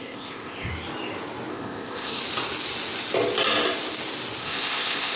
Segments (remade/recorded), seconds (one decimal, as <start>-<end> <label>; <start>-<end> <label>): 0.0-0.7 remade; 0.7-1.5 recorded; 1.5-2.2 remade; 2.2-4.4 recorded; 4.4-5.2 remade